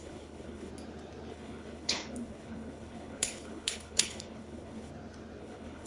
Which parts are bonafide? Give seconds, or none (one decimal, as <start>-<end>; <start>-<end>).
0.7-1.3; 4.9-5.4